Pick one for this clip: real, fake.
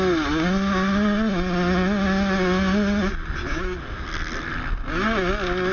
real